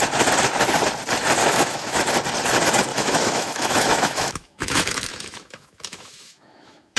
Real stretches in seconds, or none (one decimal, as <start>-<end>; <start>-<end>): 0.0-1.4; 2.0-2.9